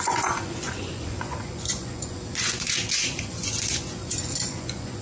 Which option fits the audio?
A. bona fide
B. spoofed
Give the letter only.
B